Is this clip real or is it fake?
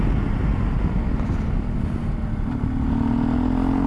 real